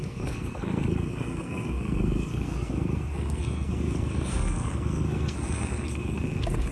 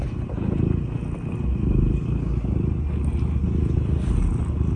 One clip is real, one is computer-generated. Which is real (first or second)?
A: second